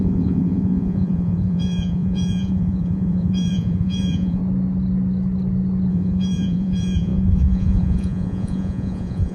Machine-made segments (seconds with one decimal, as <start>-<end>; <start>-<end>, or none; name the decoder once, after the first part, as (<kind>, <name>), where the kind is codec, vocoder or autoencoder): 0.0-4.4 (vocoder, Vocos); 5.9-9.3